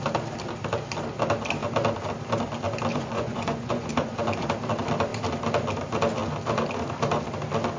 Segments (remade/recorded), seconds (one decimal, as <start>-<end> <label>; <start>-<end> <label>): 0.0-2.9 recorded; 2.9-3.9 remade; 3.9-7.8 recorded